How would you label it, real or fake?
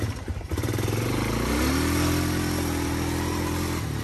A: real